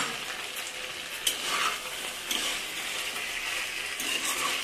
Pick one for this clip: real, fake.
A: real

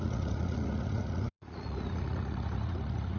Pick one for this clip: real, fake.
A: fake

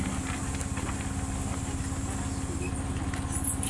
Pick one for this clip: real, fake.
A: real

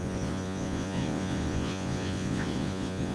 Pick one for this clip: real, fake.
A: fake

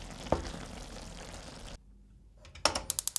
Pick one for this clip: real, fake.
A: real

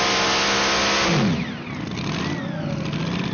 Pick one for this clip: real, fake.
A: real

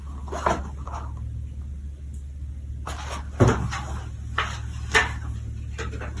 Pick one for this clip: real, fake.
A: real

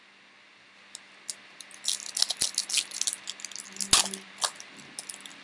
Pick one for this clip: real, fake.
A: real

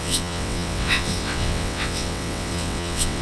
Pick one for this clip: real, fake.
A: fake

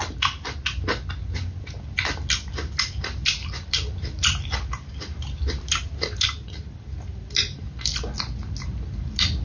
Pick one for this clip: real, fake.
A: real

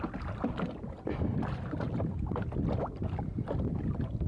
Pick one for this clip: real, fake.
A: real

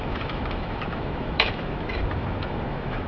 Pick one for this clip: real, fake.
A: fake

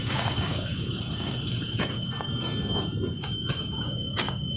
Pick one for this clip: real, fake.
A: fake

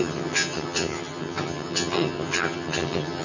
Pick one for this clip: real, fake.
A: fake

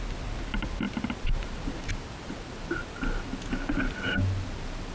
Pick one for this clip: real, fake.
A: real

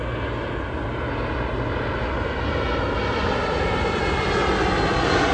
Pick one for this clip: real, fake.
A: real